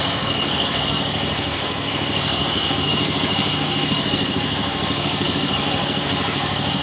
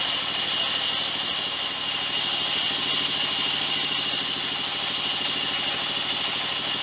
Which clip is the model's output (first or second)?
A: first